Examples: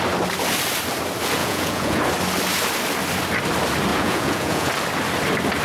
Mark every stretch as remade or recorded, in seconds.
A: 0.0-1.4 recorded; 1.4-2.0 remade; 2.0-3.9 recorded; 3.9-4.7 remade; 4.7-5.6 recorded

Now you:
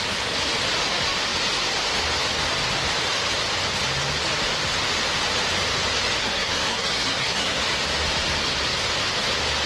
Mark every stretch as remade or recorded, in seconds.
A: 0.0-6.2 recorded; 6.2-7.6 remade; 7.6-9.7 recorded